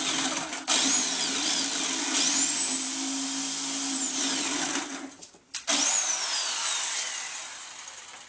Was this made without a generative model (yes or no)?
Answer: yes